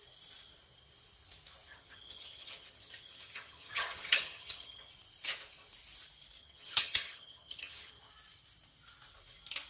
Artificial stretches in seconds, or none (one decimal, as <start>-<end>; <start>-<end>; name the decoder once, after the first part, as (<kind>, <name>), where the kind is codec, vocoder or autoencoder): 1.7-4.9 (vocoder, HiFi-GAN); 6.4-8.1